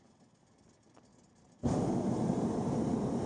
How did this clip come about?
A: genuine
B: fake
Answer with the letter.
A